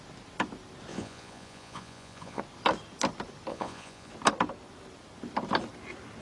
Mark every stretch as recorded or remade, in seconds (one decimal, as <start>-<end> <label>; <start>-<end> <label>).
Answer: 0.0-0.9 recorded; 0.9-2.4 remade; 2.4-3.5 recorded; 3.5-4.1 remade; 4.1-6.2 recorded